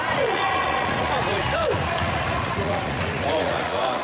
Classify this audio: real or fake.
fake